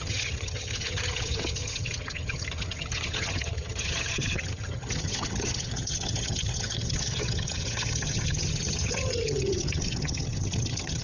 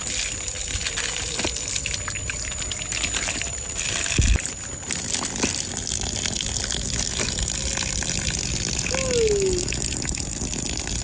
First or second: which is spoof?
first